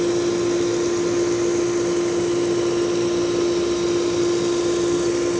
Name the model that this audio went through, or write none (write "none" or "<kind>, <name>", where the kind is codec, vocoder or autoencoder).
none